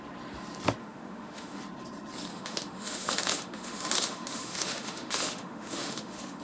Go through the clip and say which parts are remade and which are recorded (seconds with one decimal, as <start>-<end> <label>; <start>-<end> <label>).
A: 0.0-0.8 recorded; 0.8-1.6 remade; 1.6-2.3 recorded; 2.3-6.4 remade